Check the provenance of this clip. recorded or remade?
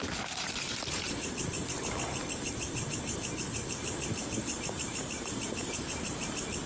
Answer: recorded